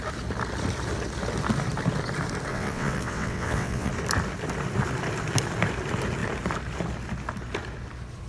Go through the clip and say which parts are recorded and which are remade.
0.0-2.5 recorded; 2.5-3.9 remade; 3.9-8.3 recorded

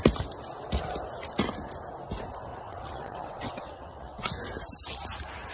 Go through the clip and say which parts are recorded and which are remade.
0.0-2.5 recorded; 2.5-4.3 remade; 4.3-5.5 recorded

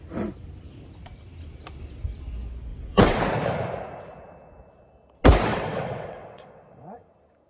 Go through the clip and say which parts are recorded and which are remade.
0.0-2.7 recorded; 2.7-3.2 remade; 3.2-5.5 recorded; 5.5-7.1 remade; 7.1-7.5 recorded